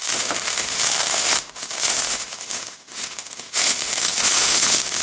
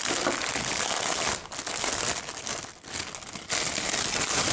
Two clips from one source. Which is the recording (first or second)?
second